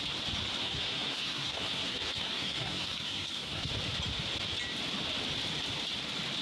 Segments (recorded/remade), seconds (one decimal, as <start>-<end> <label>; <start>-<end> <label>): 0.0-0.6 recorded; 0.6-3.7 remade; 3.7-6.4 recorded